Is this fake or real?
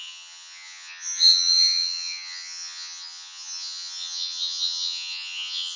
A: fake